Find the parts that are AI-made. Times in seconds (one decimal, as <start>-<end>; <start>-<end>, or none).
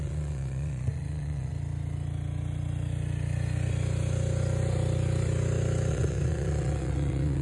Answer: 0.0-1.5; 5.9-7.4